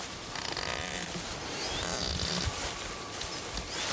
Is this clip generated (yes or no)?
no